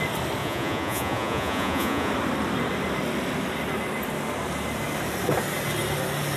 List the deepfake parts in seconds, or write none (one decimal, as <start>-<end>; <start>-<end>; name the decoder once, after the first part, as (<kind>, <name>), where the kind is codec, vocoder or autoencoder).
0.4-2.1 (vocoder, Vocos)